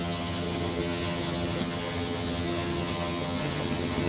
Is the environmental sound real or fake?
fake